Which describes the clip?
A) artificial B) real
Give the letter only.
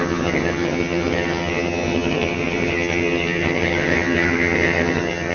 A